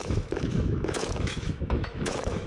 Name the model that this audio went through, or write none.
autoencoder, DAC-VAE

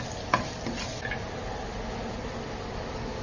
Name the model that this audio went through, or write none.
none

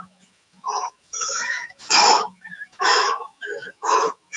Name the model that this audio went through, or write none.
autoencoder, DAC-VAE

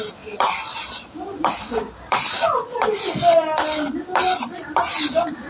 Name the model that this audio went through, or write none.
none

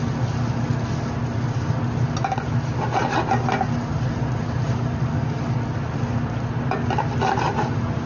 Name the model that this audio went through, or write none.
none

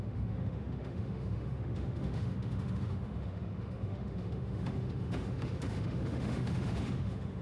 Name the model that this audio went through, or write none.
autoencoder, DAC-VAE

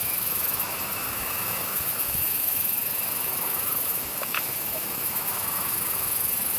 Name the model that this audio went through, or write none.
autoencoder, DAC-VAE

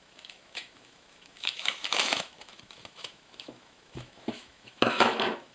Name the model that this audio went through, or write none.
autoencoder, DAC-VAE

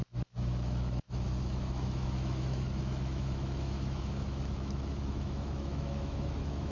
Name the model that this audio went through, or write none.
autoencoder, DAC-VAE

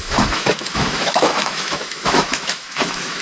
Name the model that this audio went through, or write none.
autoencoder, DAC-VAE